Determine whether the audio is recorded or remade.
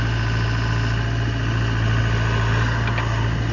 recorded